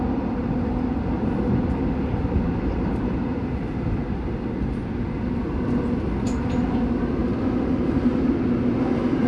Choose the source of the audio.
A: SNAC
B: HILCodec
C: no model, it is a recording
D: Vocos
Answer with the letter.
C